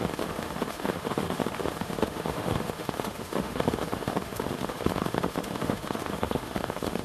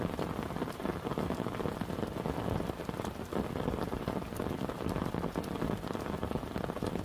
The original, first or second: second